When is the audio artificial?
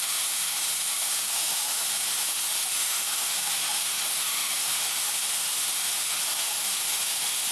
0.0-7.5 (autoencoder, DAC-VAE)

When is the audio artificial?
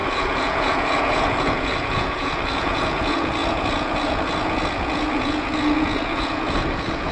0.0-7.1 (vocoder, Vocos)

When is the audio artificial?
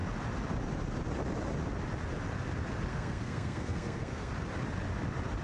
2.9-4.3 (codec, SNAC)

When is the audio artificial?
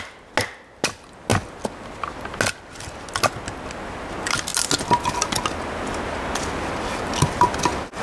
none